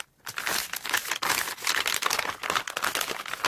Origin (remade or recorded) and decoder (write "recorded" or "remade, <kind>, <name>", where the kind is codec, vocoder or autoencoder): recorded